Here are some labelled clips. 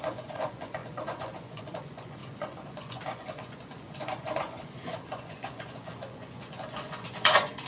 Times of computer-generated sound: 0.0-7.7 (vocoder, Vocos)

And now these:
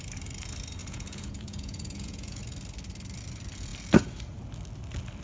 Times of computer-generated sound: 0.8-2.4 (vocoder, Vocos)

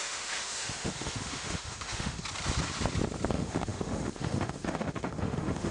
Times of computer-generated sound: 0.0-2.2 (autoencoder, DAC-VAE); 3.3-5.7

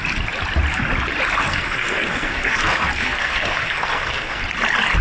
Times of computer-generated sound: 1.4-4.4 (codec, SNAC)

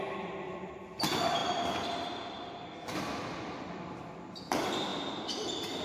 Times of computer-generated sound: none

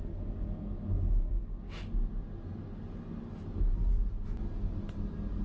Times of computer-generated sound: none